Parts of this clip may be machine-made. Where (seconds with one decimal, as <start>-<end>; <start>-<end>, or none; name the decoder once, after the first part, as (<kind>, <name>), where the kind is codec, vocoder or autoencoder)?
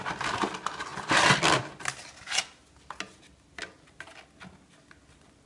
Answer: none